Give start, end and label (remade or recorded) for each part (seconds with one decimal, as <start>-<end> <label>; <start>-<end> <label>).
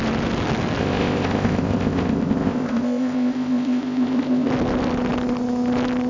0.0-0.8 recorded; 0.8-4.5 remade; 4.5-6.1 recorded